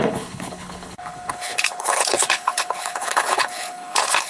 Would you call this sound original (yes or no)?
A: no